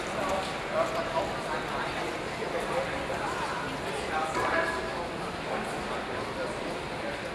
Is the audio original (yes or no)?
yes